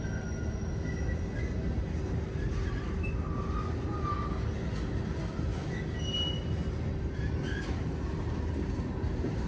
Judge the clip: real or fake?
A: real